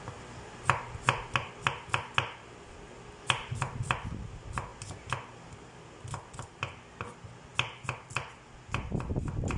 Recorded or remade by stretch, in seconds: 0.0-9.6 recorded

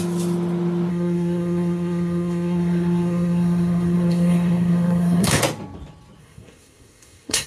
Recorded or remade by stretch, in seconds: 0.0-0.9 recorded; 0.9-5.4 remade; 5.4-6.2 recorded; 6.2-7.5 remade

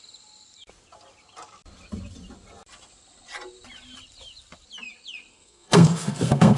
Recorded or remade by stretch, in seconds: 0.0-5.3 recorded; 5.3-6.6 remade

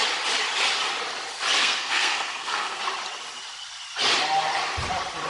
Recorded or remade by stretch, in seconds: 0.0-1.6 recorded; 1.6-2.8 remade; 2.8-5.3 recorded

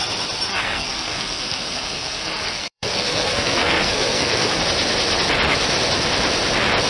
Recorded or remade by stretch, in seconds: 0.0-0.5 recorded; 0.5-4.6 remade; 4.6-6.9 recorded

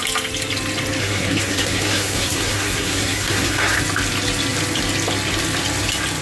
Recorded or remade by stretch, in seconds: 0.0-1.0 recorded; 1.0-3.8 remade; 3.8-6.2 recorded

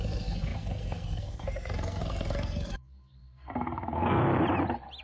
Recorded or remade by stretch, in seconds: 0.0-4.2 remade; 4.2-5.0 recorded

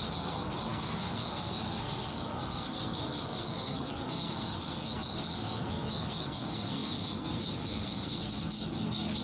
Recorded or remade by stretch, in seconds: 0.0-9.2 remade